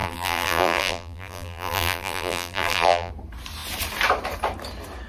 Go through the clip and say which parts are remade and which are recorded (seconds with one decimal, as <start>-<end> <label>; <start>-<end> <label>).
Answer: 0.0-3.1 remade; 3.1-5.1 recorded